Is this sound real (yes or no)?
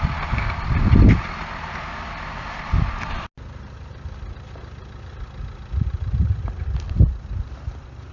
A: yes